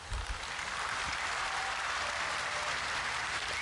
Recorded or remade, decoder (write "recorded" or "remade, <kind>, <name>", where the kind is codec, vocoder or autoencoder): remade, vocoder, BigVGAN v2